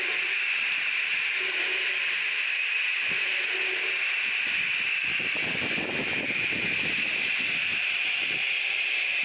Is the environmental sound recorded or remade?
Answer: recorded